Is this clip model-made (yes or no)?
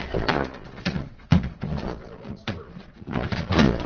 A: yes